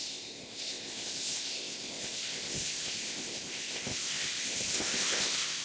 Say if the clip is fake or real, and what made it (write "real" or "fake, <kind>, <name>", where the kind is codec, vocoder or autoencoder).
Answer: fake, codec, ZipCodec